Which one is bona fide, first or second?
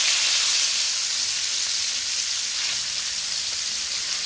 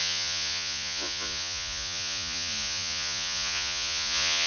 first